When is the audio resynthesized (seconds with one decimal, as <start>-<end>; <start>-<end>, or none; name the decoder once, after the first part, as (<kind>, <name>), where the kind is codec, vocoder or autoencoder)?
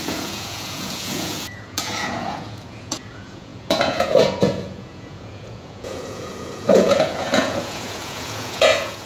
0.0-9.1 (vocoder, Vocos)